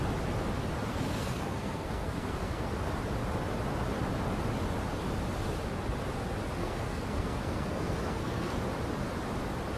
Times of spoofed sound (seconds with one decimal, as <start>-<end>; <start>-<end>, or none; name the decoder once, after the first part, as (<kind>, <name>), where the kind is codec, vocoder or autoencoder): 0.9-2.7 (codec, SNAC); 6.6-8.6